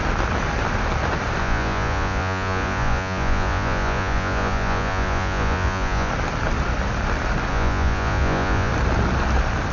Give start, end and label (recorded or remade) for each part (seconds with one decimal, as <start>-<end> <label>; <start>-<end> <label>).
0.0-1.4 recorded; 1.4-6.1 remade; 6.1-7.5 recorded; 7.5-8.7 remade; 8.7-9.7 recorded